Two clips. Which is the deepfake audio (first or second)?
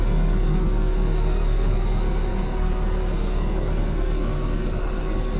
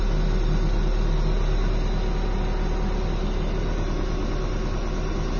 first